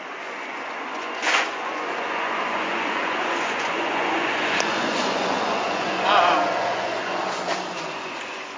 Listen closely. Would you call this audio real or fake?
fake